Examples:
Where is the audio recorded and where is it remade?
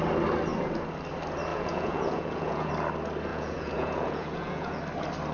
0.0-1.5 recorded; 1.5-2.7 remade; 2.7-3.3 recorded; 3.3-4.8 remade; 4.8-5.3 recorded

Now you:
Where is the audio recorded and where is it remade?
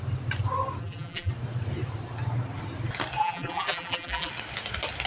0.0-0.8 recorded; 0.8-1.3 remade; 1.3-3.2 recorded; 3.2-4.3 remade; 4.3-5.1 recorded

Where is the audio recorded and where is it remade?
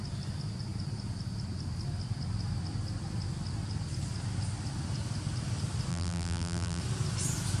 0.0-5.9 recorded; 5.9-6.8 remade; 6.8-7.6 recorded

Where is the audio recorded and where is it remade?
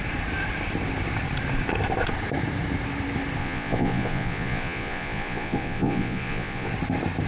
0.0-3.4 recorded; 3.4-6.7 remade; 6.7-7.3 recorded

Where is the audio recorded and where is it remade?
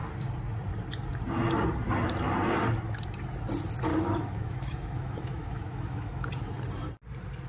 0.0-3.9 recorded; 3.9-6.3 remade; 6.3-7.5 recorded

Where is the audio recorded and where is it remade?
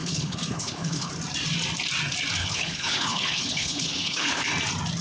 0.0-1.1 remade; 1.1-2.4 recorded; 2.4-4.5 remade; 4.5-5.0 recorded